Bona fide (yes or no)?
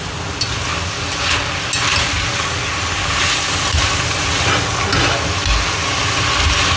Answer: yes